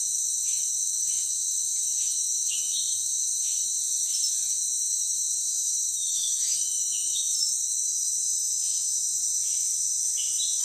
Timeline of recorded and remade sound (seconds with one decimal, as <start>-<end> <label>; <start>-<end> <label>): 0.0-3.8 remade; 3.8-4.5 recorded; 4.5-9.2 remade; 9.2-10.6 recorded